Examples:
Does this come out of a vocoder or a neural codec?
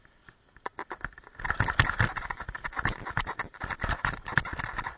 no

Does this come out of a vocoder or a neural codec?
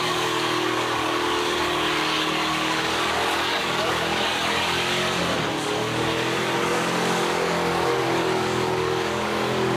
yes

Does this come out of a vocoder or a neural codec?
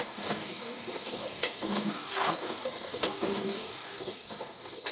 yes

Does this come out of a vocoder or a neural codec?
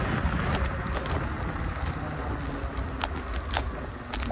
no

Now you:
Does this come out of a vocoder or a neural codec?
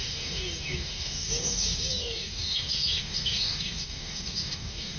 yes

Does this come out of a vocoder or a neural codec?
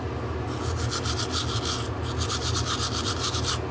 no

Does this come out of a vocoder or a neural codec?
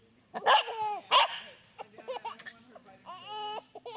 no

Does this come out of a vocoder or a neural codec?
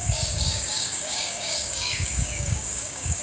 yes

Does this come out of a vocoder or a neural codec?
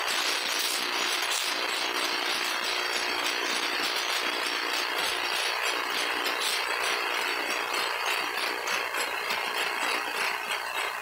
no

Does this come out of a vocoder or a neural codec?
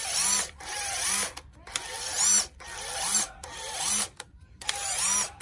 no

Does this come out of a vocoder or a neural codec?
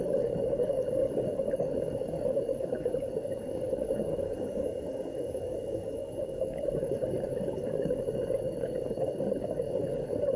yes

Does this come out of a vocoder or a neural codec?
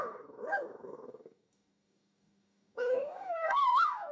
yes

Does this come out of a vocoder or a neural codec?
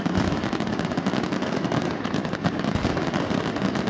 yes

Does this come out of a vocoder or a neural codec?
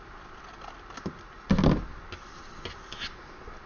no